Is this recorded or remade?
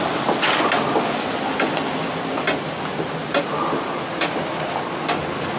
recorded